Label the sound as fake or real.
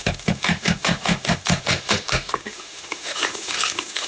fake